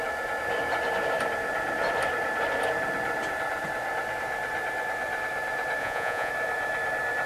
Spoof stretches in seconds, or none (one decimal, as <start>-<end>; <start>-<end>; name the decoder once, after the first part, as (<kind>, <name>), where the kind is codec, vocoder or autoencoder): 5.8-6.3 (vocoder, Vocos)